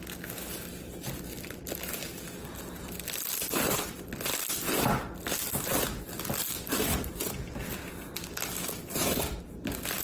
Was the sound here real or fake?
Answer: real